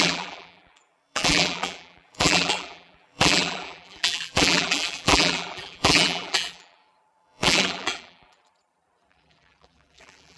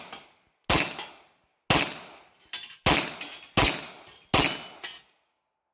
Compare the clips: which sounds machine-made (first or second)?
first